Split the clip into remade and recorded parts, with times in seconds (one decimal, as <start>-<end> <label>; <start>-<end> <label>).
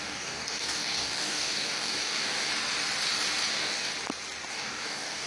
0.0-2.5 remade; 2.5-3.5 recorded; 3.5-3.9 remade; 3.9-4.5 recorded; 4.5-5.3 remade